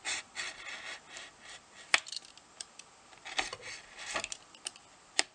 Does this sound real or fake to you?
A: real